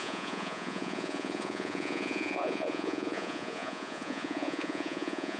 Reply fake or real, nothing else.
fake